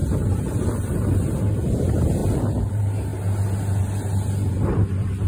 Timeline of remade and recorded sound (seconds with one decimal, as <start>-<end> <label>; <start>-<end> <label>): 0.0-2.2 remade; 2.2-2.7 recorded; 2.7-3.1 remade; 3.1-4.5 recorded; 4.5-5.3 remade

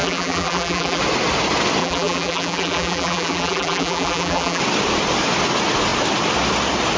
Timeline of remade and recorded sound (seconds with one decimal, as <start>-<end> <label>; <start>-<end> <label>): 0.0-1.0 remade; 1.0-1.8 recorded; 1.8-4.6 remade; 4.6-7.0 recorded